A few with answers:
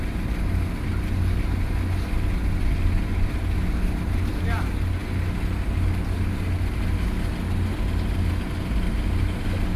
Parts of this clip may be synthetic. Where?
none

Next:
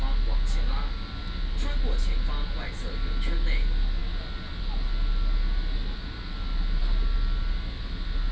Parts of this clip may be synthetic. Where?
none

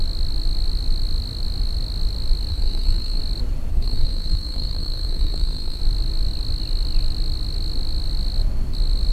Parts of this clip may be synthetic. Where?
2.5-3.2; 3.7-5.8

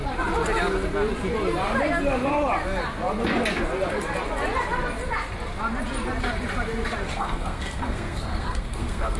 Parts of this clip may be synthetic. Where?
7.1-9.2

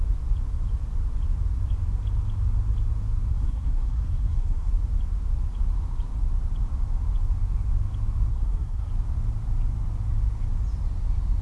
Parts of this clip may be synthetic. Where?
3.3-4.7; 8.3-8.9

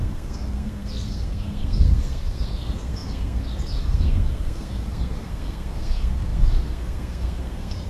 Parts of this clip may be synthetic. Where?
0.0-7.9